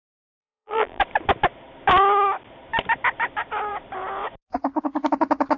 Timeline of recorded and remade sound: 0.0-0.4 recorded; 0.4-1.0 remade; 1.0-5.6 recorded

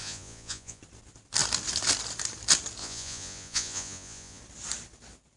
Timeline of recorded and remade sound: 0.0-0.8 remade; 0.8-2.8 recorded; 2.8-4.4 remade; 4.4-5.4 recorded